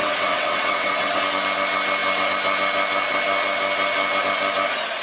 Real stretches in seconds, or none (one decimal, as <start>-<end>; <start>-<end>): 1.2-5.0